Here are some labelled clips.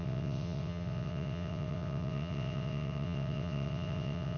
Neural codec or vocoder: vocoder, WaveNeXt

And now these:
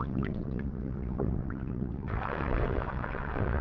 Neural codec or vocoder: vocoder, WaveNeXt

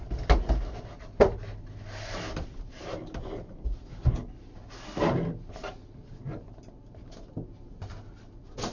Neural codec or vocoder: none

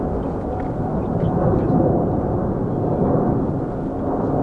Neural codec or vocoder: none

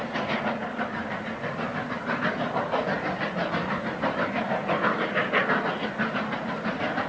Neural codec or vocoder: none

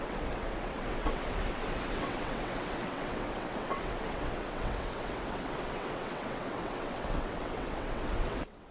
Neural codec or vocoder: vocoder, WaveNeXt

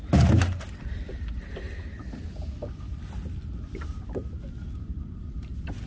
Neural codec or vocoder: none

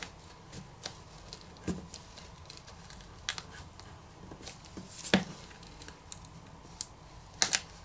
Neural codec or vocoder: none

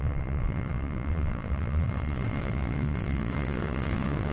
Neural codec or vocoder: vocoder, WaveNeXt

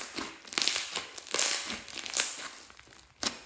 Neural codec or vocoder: none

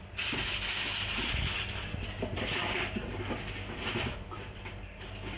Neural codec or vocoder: none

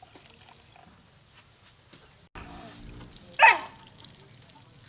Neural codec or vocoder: none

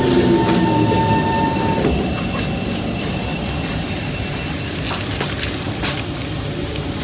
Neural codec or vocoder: none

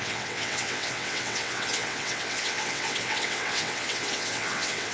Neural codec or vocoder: vocoder, WaveNeXt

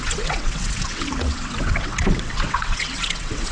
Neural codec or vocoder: vocoder, WaveNeXt